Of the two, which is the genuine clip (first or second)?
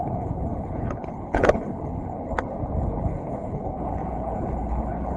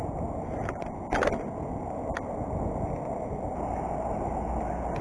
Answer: second